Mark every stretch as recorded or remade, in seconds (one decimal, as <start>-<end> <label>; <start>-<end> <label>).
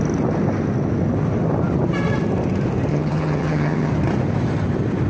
0.0-2.9 recorded; 2.9-3.9 remade; 3.9-5.1 recorded